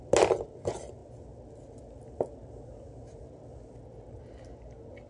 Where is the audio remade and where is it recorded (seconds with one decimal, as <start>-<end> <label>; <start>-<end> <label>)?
0.0-5.1 recorded